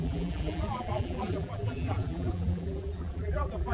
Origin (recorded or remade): remade